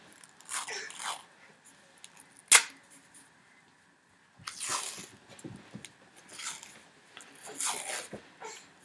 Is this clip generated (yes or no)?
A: no